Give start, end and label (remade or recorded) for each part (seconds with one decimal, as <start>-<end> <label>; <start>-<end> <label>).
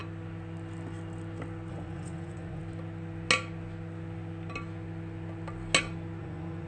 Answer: 0.0-1.7 recorded; 1.7-2.6 remade; 2.6-6.2 recorded; 6.2-6.7 remade